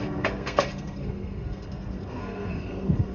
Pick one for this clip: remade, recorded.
remade